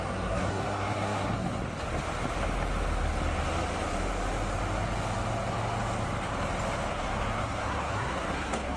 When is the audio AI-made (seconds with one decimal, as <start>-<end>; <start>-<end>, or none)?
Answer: 0.0-1.6; 6.9-8.8